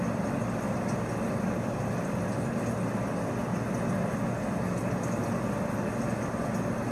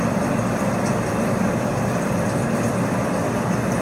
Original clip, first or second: first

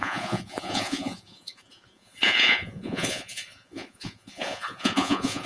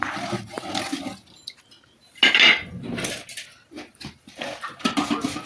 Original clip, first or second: second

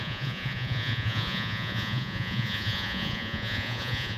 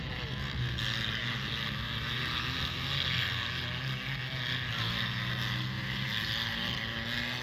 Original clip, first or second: second